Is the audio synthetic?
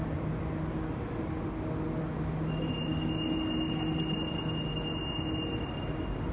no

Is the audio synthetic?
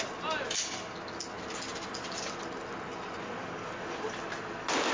no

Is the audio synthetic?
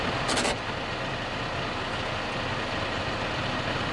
no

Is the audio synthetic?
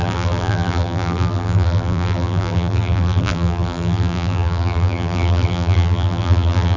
yes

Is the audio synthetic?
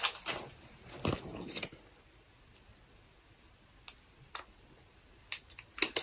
no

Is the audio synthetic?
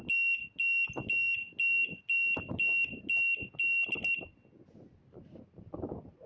no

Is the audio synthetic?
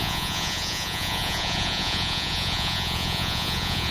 yes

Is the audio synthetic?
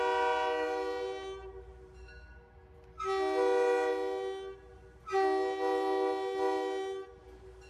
no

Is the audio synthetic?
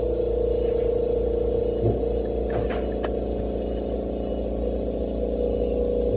no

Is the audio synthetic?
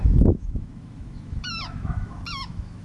yes